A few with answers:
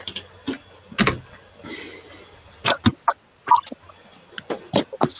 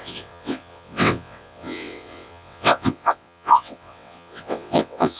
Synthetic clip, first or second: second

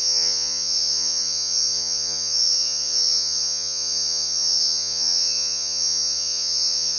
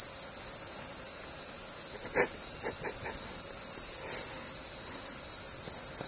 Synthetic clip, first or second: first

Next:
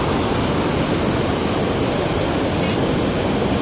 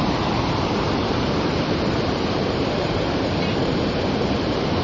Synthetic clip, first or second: second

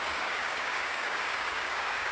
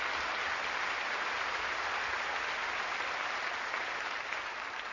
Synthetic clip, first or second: first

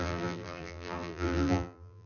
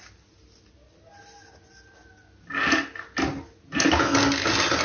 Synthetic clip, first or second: first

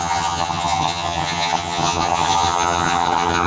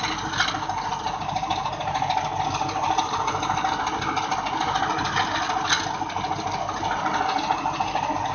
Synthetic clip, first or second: first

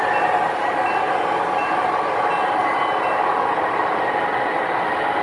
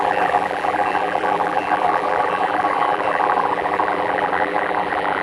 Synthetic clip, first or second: second